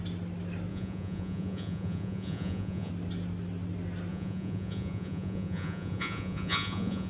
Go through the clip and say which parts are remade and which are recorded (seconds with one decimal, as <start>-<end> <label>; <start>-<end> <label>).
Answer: 0.0-0.7 recorded; 0.7-2.9 remade; 2.9-4.1 recorded; 4.1-7.1 remade